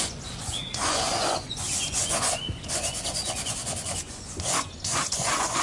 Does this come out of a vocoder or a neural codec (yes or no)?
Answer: yes